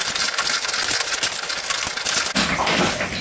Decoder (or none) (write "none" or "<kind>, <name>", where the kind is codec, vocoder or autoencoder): none